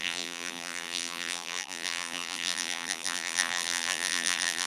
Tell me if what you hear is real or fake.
fake